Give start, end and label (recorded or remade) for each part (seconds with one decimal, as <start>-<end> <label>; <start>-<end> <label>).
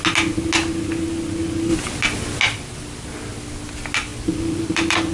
0.0-4.1 recorded; 4.1-5.1 remade